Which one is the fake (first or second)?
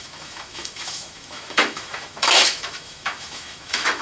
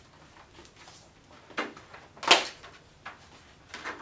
first